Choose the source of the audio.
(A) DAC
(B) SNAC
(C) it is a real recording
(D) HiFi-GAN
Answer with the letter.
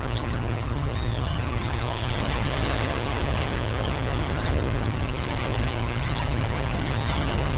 D